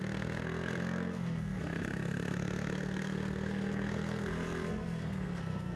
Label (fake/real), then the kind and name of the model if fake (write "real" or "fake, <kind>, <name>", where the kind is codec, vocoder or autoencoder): fake, codec, SNAC